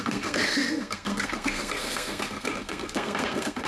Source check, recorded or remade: remade